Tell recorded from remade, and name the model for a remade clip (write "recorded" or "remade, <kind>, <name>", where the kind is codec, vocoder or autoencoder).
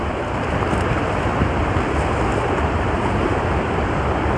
recorded